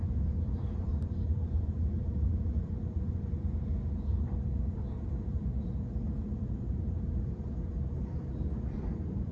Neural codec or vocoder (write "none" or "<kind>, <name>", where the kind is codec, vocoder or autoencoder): vocoder, BigVGAN v2